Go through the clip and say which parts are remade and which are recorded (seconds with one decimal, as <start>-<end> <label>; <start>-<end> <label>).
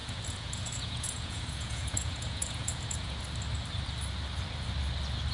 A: 0.0-3.2 remade; 3.2-5.3 recorded